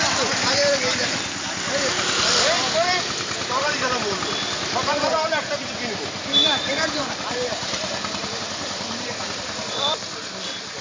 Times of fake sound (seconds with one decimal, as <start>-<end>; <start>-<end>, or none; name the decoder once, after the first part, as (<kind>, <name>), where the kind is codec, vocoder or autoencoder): 5.1-5.7 (vocoder, BigVGAN v2); 6.7-9.4